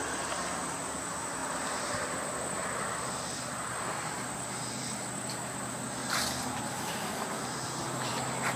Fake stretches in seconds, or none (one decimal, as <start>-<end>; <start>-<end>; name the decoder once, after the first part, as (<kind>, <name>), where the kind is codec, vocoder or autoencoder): 1.4-2.9 (vocoder, BigVGAN v2); 7.5-8.6